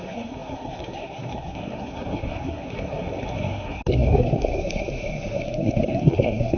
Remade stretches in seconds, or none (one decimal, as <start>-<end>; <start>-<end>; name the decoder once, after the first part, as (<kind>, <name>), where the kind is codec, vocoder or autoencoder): 0.0-6.6 (codec, SNAC)